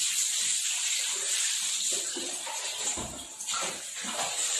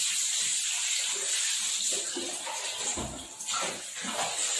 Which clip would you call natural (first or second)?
second